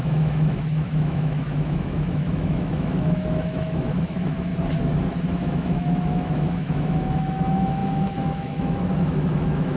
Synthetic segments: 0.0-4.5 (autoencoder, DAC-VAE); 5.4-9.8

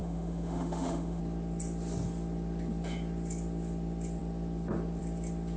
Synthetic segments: 0.0-1.2 (autoencoder, DAC-VAE)

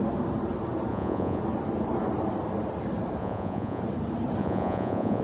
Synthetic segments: 0.9-1.4 (vocoder, Vocos); 3.2-3.8; 4.4-5.2

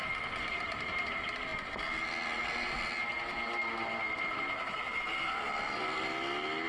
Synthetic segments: none

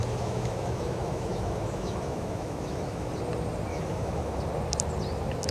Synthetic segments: 0.0-3.1 (autoencoder, DAC-VAE); 3.7-4.4

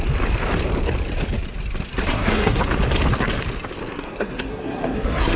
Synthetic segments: 2.1-2.6 (codec, SNAC); 3.8-5.4

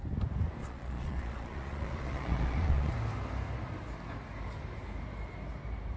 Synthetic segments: 0.6-2.9 (vocoder, Vocos)

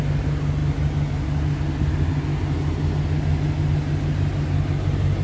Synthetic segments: none